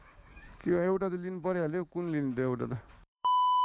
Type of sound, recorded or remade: remade